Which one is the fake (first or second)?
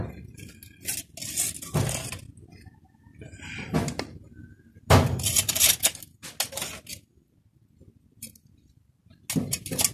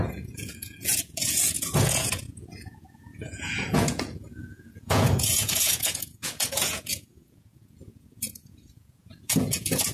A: second